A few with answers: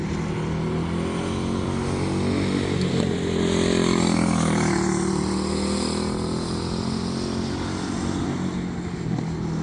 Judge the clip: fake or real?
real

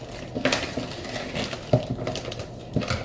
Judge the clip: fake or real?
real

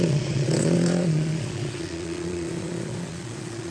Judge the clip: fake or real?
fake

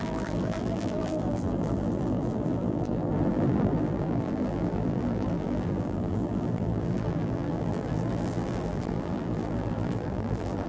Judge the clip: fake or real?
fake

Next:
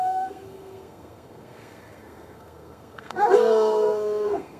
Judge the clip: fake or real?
fake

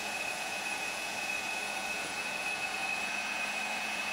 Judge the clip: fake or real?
fake